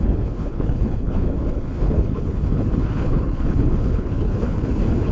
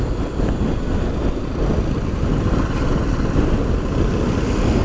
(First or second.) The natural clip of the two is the second